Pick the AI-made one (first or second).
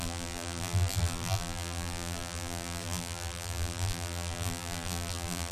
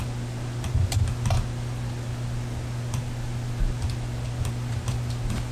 first